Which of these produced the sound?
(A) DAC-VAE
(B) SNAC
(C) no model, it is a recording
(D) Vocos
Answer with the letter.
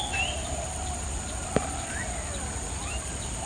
C